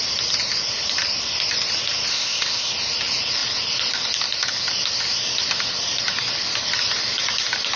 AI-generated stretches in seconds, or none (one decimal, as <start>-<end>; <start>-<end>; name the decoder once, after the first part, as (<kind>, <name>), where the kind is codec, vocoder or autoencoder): 2.1-2.7 (codec, ZipCodec)